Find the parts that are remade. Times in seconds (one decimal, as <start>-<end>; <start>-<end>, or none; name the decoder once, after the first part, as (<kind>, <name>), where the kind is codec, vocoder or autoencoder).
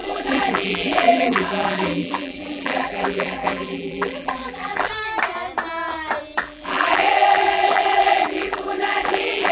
0.0-4.9 (vocoder, BigVGAN v2); 6.4-9.5